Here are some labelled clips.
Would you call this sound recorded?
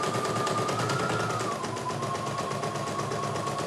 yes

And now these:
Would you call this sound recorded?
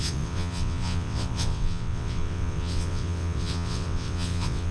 no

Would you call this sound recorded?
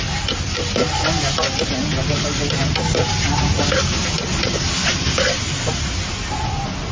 yes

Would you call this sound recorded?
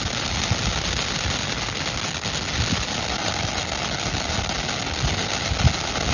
yes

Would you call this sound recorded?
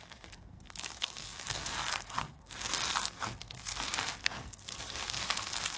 no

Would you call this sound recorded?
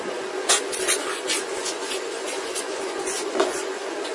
no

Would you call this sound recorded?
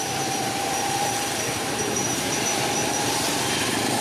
no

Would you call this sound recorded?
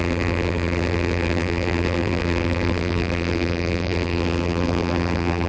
no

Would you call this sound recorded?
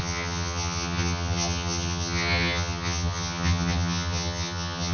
no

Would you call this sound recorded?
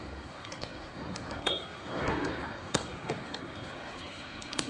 no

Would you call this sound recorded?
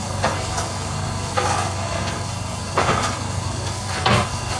no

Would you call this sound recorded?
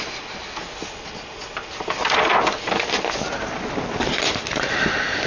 yes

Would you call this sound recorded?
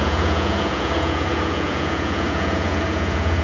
no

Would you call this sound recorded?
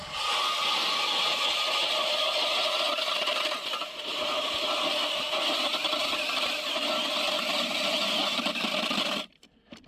yes